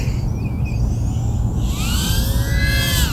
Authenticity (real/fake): real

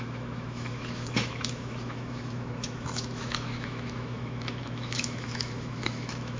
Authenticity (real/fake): fake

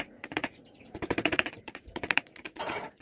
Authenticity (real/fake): fake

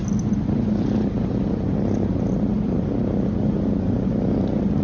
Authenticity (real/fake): real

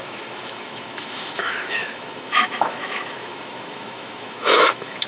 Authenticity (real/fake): fake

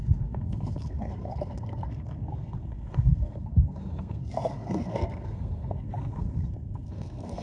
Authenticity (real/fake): fake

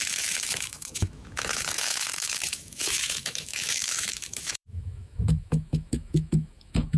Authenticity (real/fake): fake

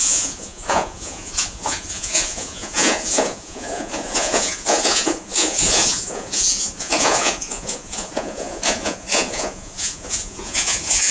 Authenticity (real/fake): fake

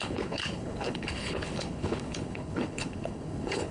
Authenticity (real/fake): fake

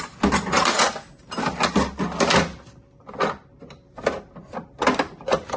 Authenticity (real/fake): real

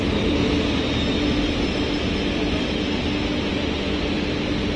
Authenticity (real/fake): real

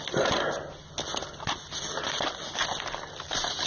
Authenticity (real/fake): real